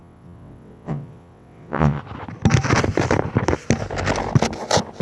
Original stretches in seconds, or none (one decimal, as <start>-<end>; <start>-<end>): 2.0-5.0